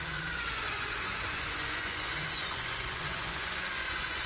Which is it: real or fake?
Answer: fake